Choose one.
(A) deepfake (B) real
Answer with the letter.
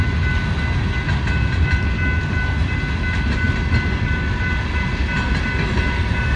B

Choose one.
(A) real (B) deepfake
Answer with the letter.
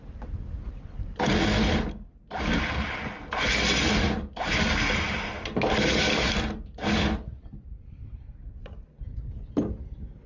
A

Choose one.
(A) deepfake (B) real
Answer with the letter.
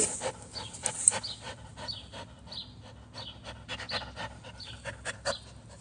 B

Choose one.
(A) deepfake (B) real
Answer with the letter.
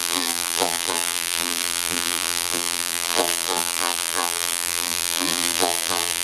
A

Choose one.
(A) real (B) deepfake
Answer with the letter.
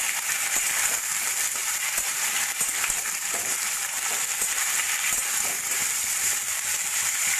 B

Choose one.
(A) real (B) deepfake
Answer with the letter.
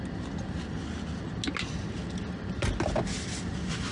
A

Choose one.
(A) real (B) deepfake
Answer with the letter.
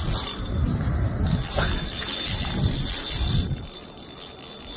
A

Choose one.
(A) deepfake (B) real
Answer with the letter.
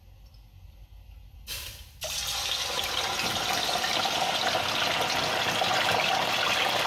B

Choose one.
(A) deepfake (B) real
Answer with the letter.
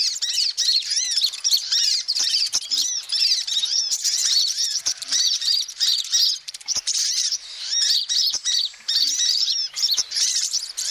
A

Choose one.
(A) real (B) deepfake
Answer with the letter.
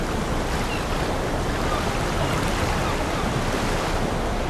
A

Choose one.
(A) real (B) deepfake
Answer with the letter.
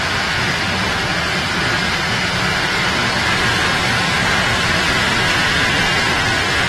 A